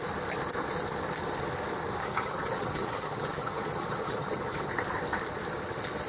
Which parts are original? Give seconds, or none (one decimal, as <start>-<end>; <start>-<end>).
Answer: 0.0-2.0; 4.7-6.1